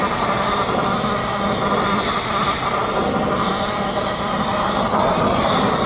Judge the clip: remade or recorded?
recorded